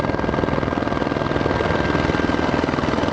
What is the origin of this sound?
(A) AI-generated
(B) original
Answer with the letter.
B